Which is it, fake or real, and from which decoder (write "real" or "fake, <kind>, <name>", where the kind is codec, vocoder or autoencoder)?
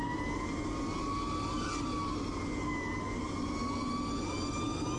real